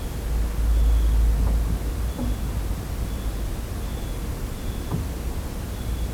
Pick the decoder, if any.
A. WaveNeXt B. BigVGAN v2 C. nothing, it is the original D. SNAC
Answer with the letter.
C